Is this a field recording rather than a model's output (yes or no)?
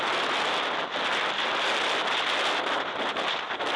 yes